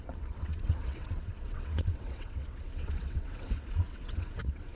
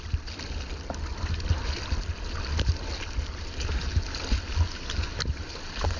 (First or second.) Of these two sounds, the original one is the second